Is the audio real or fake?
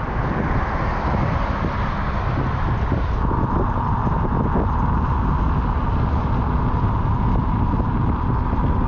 real